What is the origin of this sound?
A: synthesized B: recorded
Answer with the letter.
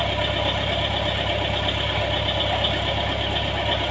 B